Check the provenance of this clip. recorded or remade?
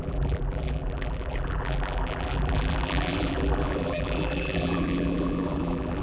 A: remade